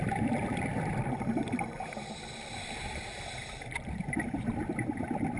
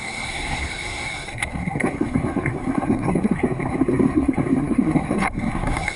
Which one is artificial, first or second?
second